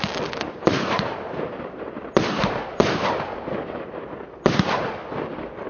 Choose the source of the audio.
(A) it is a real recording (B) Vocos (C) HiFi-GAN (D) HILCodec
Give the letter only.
A